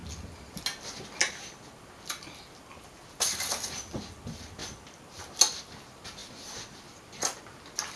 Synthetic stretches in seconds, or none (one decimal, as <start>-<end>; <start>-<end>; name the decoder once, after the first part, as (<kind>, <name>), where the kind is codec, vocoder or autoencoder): none